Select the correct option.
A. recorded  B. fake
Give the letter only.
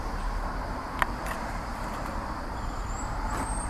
B